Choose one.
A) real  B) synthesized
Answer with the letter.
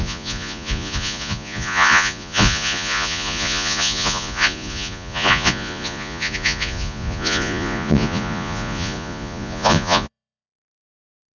B